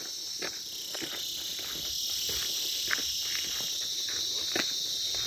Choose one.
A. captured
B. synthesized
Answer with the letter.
A